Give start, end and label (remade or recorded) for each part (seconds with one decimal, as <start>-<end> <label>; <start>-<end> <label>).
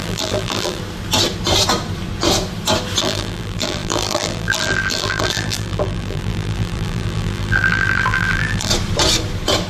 0.0-0.8 remade; 0.8-3.0 recorded; 3.0-8.7 remade; 8.7-9.7 recorded